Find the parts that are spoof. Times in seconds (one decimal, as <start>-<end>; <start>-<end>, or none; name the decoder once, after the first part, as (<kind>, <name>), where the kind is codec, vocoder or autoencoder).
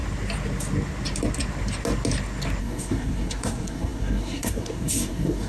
2.6-5.5 (codec, SNAC)